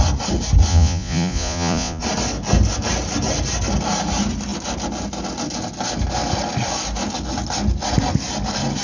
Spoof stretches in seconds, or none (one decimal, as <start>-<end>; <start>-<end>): 0.7-2.0